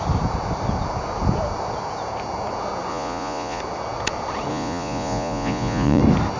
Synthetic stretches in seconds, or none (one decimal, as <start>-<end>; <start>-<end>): 2.9-3.6; 4.5-6.0

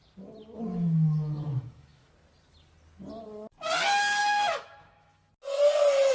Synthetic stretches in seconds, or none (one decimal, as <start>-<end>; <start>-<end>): 0.7-2.1; 4.2-5.3

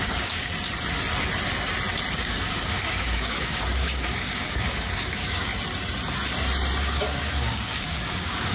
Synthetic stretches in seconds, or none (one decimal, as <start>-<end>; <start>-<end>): 0.0-0.5; 2.2-5.5; 6.8-8.5

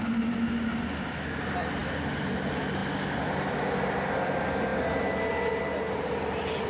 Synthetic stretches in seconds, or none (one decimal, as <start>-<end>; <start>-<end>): none